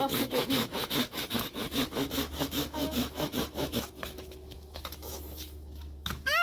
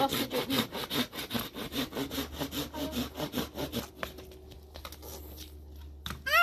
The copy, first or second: first